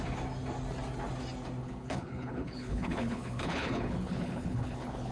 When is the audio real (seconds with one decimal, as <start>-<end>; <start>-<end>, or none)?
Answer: 0.0-1.6